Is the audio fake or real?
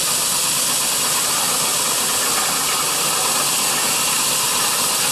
real